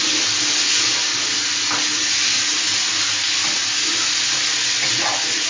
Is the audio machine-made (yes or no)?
no